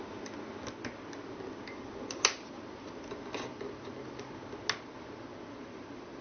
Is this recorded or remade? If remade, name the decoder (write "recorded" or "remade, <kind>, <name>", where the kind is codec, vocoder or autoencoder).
recorded